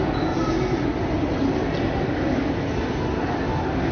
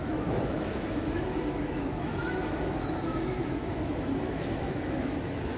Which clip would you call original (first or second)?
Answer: first